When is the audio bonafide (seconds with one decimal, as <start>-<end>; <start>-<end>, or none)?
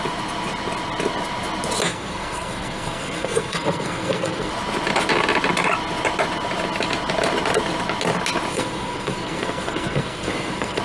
0.0-1.9; 4.5-8.5